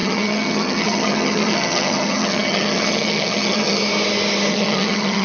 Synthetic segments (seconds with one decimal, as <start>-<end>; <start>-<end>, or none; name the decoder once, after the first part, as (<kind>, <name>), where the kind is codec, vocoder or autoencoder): 0.0-3.8 (vocoder, HiFi-GAN); 4.5-5.2